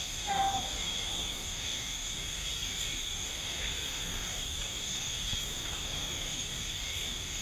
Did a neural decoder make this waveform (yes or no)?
yes